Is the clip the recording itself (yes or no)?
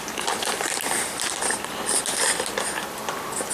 yes